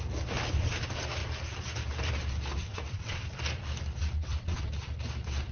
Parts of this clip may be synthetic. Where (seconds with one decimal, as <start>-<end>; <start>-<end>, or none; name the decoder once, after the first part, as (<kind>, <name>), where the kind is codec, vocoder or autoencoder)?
2.5-3.3 (vocoder, WaveNeXt); 4.0-4.7